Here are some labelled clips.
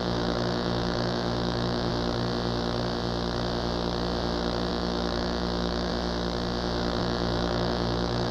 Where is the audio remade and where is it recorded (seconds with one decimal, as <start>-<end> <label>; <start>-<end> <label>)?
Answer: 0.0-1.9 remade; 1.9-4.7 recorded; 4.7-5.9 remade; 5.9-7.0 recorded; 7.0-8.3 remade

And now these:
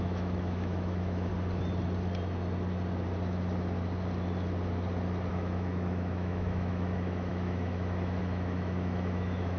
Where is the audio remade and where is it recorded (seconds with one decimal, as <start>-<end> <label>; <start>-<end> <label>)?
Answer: 0.0-1.3 remade; 1.3-5.3 recorded; 5.3-9.6 remade

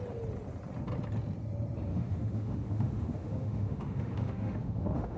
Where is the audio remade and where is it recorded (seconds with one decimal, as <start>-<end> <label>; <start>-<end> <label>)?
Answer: 0.0-1.9 recorded; 1.9-5.2 remade